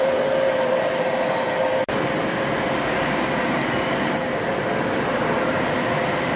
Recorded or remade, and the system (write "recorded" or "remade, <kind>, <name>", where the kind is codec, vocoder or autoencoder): remade, vocoder, BigVGAN v2